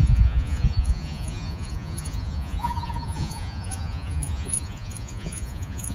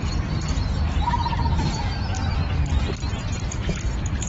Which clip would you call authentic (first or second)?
second